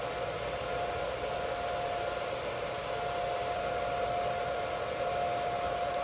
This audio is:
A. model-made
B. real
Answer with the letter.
B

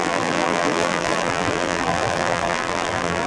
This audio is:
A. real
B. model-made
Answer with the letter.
B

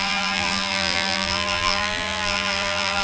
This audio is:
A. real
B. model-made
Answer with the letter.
B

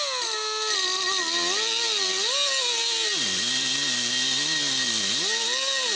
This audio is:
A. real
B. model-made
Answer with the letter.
A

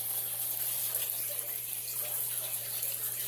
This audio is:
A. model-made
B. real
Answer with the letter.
B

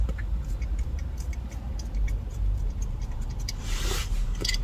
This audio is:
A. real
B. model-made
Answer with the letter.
B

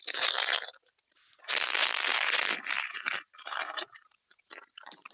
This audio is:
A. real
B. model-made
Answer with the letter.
B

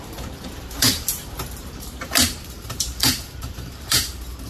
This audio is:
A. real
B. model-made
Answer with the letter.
B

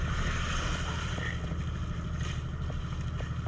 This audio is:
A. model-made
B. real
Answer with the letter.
B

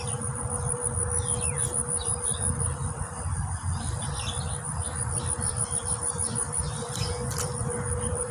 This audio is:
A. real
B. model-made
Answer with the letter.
B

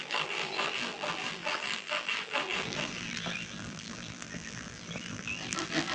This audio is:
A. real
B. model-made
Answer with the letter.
B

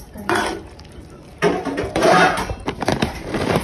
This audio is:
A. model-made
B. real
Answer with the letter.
A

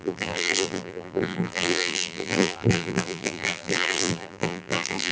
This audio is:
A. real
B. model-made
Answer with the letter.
B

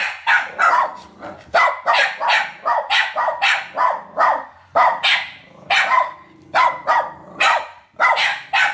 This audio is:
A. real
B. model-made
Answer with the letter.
B